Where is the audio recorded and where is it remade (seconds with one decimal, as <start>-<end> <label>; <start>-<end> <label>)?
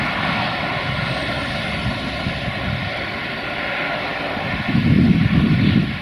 0.0-6.0 recorded